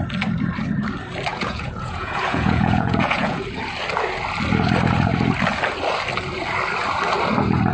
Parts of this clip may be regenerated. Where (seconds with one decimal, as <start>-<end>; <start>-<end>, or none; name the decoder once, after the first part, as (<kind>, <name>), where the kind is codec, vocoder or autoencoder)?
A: 1.3-3.4 (vocoder, Vocos)